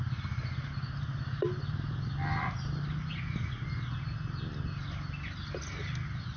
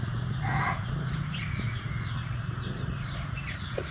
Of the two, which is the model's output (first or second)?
second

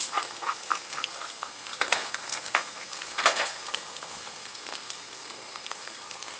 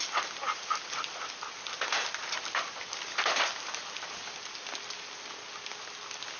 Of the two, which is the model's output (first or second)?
first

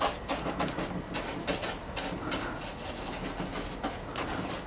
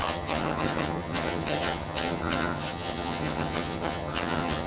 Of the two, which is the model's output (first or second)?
second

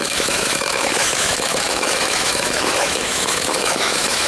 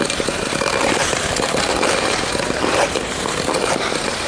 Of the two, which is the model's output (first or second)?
first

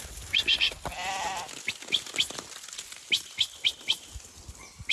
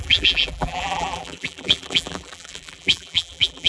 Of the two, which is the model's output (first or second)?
second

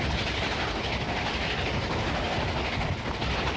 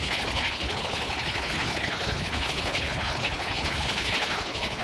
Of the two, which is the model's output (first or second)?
second